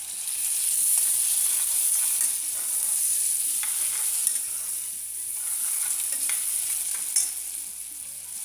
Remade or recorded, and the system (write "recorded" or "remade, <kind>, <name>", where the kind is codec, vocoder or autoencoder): recorded